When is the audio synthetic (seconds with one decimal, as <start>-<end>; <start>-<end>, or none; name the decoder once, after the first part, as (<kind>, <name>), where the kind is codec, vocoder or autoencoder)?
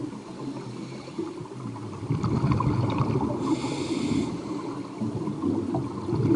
1.4-5.2 (vocoder, BigVGAN v2)